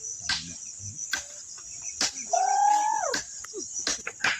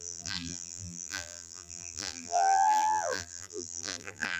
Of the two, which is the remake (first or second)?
second